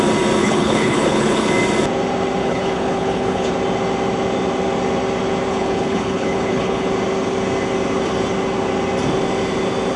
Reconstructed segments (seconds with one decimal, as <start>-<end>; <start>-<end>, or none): 0.4-1.5; 2.4-3.5; 5.5-6.9